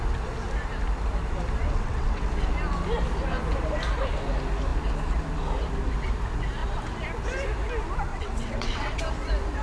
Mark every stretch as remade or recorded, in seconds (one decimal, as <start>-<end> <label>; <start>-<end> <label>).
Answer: 0.0-1.6 recorded; 1.6-2.3 remade; 2.3-8.1 recorded; 8.1-9.0 remade; 9.0-9.6 recorded